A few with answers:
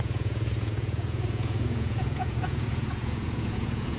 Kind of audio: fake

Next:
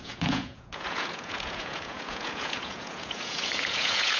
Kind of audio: fake